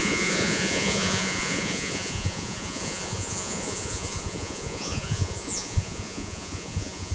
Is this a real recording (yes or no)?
no